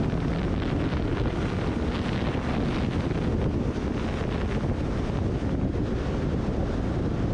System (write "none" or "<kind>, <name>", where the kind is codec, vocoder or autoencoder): none